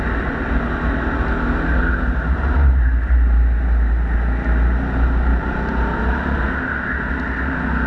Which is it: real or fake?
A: real